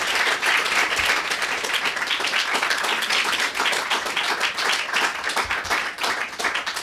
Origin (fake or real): real